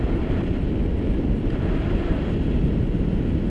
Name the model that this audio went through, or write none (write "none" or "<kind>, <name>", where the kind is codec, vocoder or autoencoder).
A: none